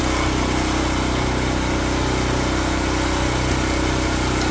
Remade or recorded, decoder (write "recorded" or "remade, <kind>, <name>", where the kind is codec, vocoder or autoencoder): recorded